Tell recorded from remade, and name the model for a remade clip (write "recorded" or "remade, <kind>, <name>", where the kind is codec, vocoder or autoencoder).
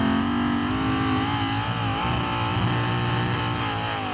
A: recorded